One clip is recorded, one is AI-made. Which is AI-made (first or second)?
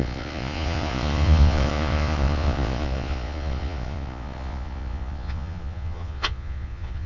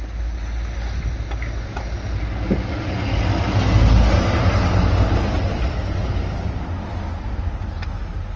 first